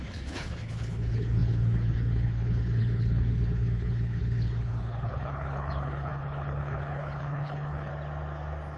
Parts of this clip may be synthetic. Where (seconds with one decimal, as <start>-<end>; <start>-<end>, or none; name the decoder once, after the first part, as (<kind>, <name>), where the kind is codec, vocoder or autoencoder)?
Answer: 0.0-7.9 (codec, HILCodec)